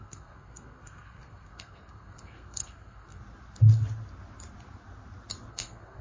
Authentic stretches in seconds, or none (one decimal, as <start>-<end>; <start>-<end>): 3.2-5.5